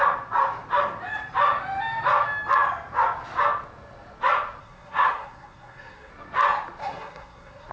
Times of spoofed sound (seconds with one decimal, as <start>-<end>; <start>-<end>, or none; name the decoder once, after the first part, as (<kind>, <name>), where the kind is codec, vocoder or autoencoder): 4.6-6.1 (codec, SNAC); 6.8-7.7